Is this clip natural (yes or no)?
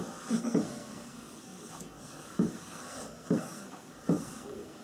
no